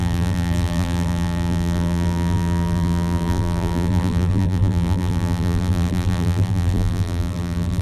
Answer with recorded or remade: remade